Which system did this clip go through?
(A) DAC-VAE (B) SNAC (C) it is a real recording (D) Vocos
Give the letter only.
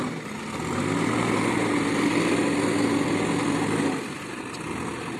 C